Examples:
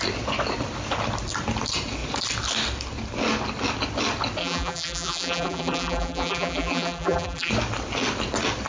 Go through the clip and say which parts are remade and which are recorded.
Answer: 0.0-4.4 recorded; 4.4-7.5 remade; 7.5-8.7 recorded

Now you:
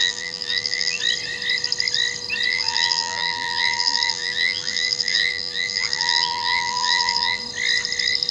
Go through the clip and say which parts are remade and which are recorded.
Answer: 0.0-1.0 remade; 1.0-2.5 recorded; 2.5-7.4 remade; 7.4-8.3 recorded

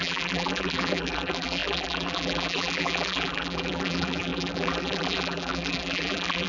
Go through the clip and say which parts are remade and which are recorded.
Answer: 0.0-6.5 remade

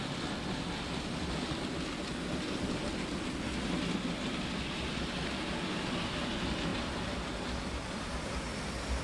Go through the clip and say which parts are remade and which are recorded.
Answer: 0.0-9.0 recorded

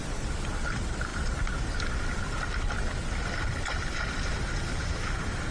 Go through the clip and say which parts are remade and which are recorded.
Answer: 0.0-5.5 recorded

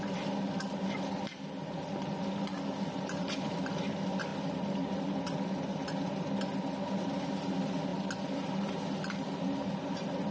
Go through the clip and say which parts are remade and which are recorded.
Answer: 0.0-10.3 recorded

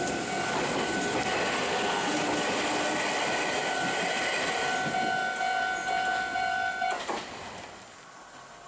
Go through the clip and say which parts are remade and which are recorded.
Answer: 0.0-3.6 recorded; 3.6-4.6 remade; 4.6-6.1 recorded; 6.1-7.6 remade; 7.6-8.7 recorded